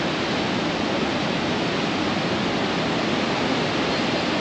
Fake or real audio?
real